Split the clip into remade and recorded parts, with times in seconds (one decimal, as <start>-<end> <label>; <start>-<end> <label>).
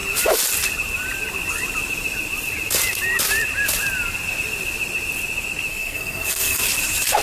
0.0-5.7 recorded; 5.7-6.6 remade; 6.6-7.2 recorded